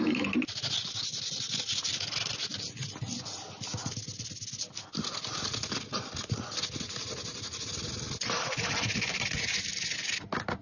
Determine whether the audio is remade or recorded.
recorded